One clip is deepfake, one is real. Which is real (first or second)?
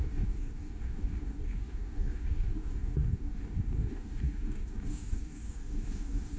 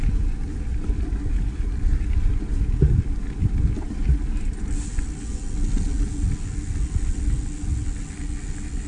second